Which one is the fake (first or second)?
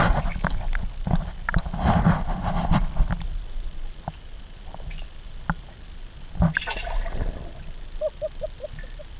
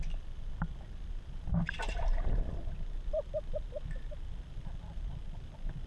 second